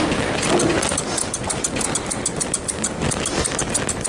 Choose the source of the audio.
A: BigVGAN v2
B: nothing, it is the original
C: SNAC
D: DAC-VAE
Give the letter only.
B